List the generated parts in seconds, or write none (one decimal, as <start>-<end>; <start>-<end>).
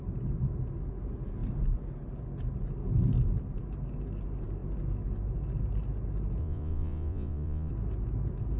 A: 6.4-7.7